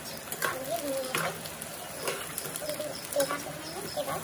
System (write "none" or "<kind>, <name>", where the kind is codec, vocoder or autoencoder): none